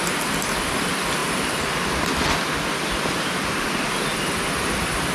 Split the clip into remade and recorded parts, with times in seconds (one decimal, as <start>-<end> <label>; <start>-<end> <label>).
0.0-5.1 recorded